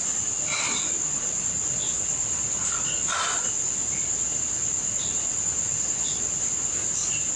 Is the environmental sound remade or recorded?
recorded